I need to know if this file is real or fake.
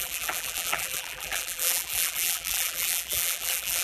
fake